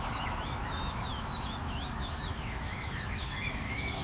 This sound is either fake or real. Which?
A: fake